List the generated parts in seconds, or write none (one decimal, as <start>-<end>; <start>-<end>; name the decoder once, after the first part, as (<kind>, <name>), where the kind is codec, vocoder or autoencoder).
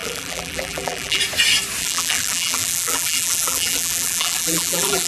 0.0-1.2 (vocoder, BigVGAN v2); 1.8-5.1